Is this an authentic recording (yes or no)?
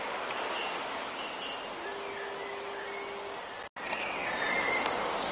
yes